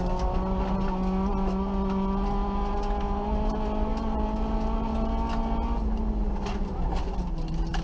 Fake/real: real